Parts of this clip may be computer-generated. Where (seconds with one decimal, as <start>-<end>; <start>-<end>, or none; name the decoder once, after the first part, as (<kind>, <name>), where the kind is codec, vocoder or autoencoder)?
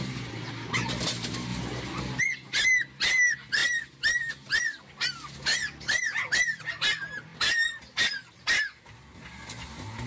none